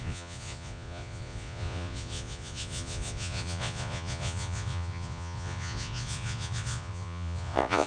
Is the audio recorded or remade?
remade